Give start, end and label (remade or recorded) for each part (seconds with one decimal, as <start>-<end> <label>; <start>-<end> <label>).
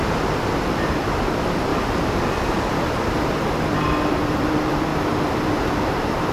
0.0-1.7 remade; 1.7-4.1 recorded; 4.1-4.9 remade; 4.9-5.8 recorded; 5.8-6.3 remade